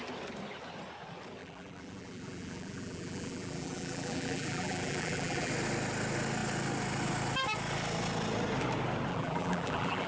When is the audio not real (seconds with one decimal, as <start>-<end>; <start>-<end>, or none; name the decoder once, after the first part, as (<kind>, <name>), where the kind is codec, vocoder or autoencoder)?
1.4-5.5 (vocoder, BigVGAN v2); 9.1-10.1